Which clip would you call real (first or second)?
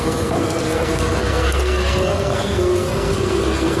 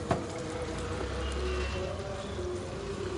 second